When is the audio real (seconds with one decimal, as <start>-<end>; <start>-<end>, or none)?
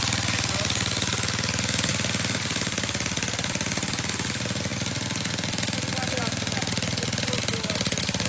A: 0.0-8.3